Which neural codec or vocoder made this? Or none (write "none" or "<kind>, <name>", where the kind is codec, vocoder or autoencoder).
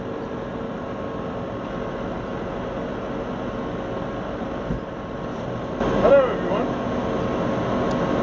none